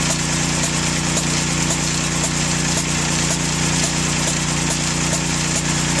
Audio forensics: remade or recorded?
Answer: recorded